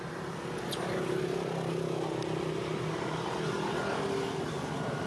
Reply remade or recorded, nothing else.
recorded